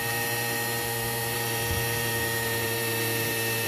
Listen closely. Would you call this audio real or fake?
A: fake